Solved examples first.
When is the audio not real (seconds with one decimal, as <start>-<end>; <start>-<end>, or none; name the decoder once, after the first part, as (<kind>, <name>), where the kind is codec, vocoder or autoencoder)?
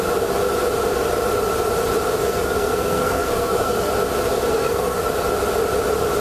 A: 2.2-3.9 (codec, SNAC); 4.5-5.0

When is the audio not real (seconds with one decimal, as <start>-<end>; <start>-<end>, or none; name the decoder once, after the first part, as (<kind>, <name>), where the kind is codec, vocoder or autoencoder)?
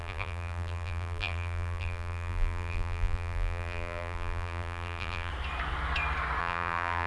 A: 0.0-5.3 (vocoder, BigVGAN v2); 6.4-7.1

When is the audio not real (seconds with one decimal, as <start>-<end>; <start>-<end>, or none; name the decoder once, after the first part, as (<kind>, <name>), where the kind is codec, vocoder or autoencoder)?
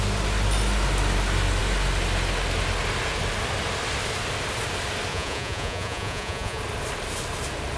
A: 5.1-6.6 (vocoder, Vocos)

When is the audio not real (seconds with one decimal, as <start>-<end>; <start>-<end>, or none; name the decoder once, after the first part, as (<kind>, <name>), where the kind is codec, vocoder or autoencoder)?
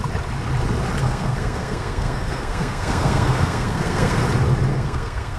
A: 1.0-4.2 (codec, SNAC); 4.7-5.4